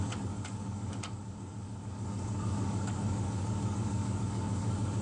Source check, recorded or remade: remade